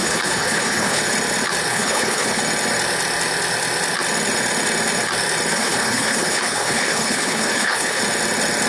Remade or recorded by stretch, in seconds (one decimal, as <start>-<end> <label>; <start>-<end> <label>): 0.0-1.0 remade; 1.0-1.7 recorded; 1.7-2.4 remade; 2.4-5.5 recorded; 5.5-8.0 remade; 8.0-8.7 recorded